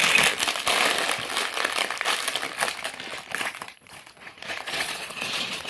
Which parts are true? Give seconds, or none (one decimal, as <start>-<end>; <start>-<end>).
0.0-3.4